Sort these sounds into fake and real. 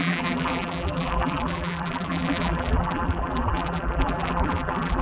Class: fake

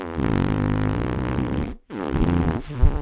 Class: real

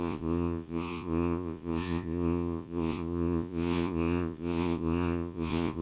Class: fake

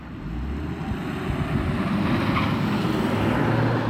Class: real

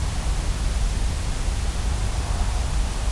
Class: real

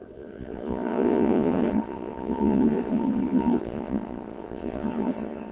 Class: fake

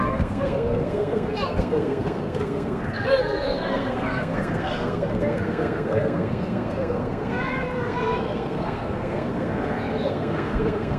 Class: fake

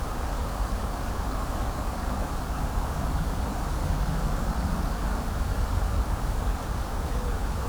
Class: fake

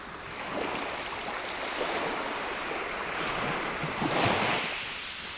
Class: real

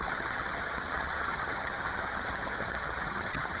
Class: fake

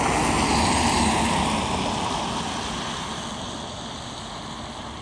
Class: real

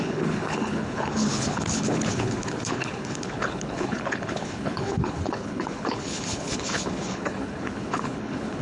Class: fake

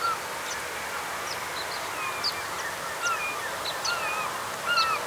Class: real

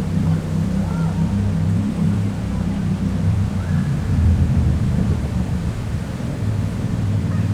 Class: fake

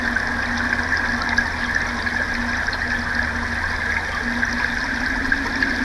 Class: real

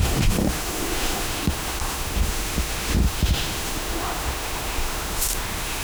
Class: fake